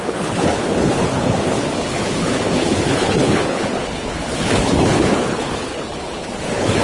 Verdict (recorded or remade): remade